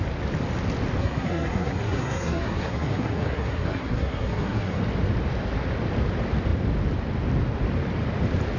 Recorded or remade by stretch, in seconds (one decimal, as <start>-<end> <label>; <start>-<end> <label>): 0.0-1.0 recorded; 1.0-4.8 remade; 4.8-8.6 recorded